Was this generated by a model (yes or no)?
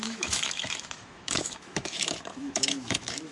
yes